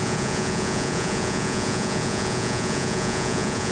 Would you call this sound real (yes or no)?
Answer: no